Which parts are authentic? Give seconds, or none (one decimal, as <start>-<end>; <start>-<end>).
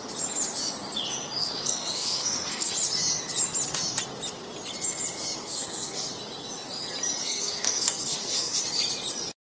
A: 0.0-1.4; 2.7-5.4; 6.1-7.2; 8.6-9.5